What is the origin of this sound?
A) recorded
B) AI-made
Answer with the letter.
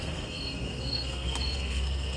B